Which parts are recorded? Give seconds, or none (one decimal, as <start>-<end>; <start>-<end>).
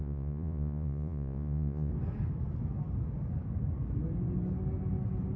1.9-5.4